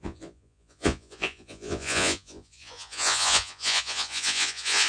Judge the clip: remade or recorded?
remade